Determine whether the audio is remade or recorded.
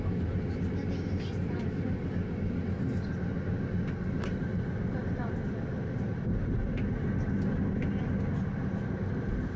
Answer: recorded